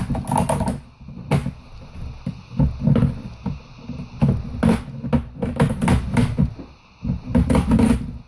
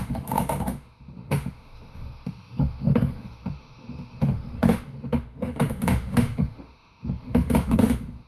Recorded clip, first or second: first